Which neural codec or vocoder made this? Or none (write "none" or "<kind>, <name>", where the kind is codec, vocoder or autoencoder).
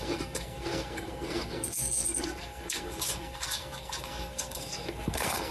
codec, SNAC